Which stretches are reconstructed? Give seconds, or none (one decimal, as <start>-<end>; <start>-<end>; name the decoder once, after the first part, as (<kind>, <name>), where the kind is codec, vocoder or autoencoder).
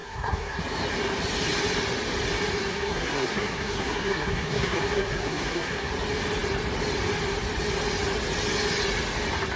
0.0-0.6 (codec, SNAC); 2.7-5.9